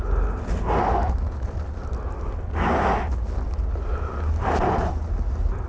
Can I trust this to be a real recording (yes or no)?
yes